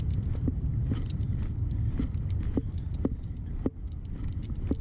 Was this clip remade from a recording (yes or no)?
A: no